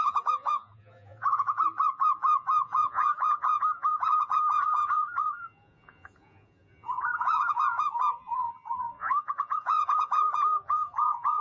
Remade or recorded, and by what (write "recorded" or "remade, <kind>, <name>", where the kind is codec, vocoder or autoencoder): remade, vocoder, Vocos